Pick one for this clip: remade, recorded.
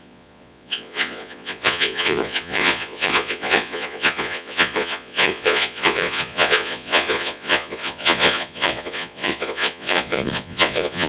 remade